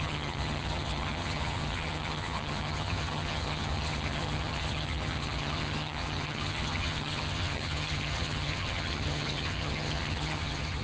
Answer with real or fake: fake